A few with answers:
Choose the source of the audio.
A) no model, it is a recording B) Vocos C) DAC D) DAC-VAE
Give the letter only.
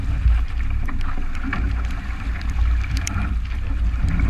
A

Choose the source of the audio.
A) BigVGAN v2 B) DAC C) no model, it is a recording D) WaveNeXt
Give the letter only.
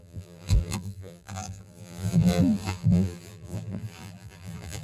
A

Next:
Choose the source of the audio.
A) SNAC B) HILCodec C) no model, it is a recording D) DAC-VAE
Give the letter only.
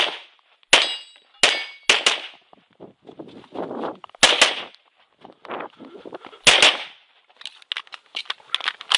C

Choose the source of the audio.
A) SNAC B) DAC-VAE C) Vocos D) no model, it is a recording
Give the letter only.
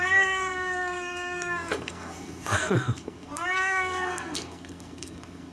A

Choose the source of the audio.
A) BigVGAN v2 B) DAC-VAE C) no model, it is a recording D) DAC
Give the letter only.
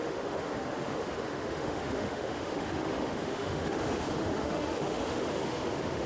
B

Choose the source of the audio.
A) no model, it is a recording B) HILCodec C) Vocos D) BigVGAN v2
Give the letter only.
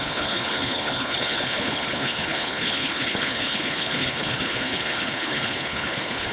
B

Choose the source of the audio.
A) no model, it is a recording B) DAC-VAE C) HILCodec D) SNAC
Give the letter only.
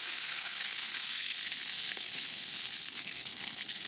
D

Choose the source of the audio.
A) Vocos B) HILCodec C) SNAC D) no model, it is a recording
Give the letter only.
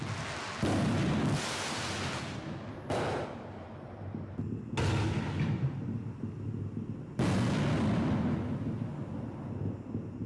D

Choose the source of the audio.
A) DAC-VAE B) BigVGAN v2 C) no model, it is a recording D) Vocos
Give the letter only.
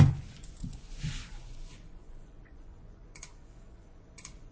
D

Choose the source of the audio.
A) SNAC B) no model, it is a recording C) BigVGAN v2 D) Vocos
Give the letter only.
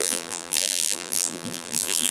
C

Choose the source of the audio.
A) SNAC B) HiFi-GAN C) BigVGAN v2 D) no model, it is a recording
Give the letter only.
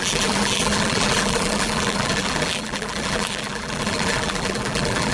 C